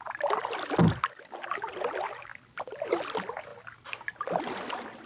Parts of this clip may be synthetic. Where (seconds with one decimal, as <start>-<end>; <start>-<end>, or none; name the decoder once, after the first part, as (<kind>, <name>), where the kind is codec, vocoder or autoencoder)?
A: none